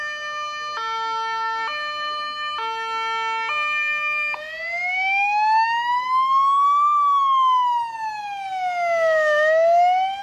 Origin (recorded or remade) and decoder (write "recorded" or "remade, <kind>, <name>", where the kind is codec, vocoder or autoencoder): recorded